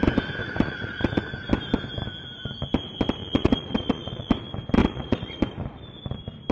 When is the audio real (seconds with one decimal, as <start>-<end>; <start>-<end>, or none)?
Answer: 0.0-0.4; 1.2-3.2; 4.3-4.8; 5.4-6.5